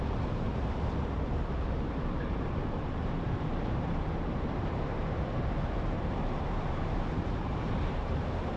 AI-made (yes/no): yes